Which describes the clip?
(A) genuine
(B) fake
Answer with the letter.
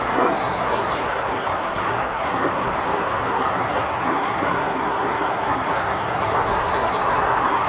B